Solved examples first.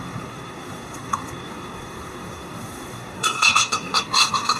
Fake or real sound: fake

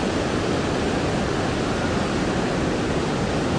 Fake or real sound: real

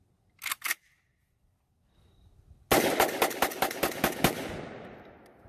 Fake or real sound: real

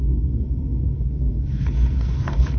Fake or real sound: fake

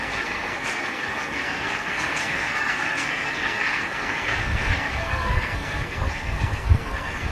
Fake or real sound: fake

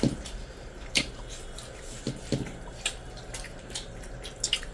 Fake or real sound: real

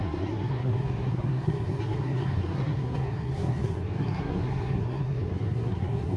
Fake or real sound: fake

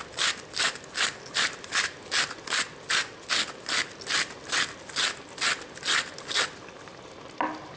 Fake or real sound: real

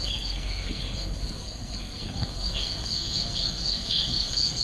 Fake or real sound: fake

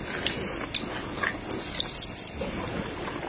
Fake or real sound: real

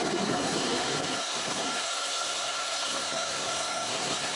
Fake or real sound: fake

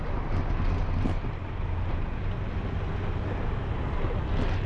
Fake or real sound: real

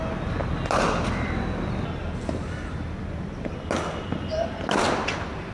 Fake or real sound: real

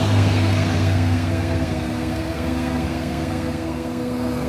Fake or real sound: fake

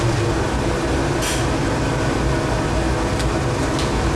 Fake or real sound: real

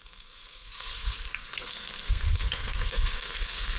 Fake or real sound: fake